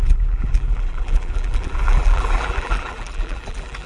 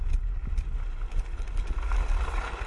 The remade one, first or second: first